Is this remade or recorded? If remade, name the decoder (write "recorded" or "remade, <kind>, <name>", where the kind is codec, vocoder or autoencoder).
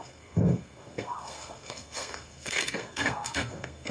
remade, codec, SNAC